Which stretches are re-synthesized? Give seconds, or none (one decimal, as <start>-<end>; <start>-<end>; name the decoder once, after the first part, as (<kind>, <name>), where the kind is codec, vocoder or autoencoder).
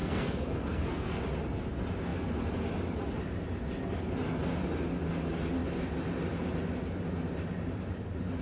0.0-1.2 (codec, SNAC)